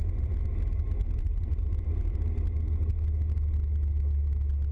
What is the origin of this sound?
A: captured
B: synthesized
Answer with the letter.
A